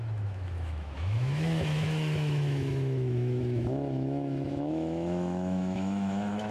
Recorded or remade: remade